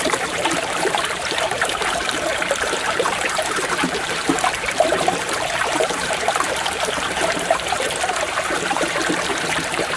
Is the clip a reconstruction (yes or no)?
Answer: yes